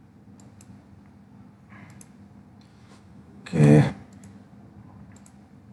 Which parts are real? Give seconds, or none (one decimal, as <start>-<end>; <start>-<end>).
0.0-2.7; 3.9-5.7